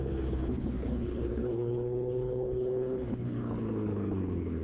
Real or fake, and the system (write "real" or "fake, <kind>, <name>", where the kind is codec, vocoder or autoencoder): fake, codec, HILCodec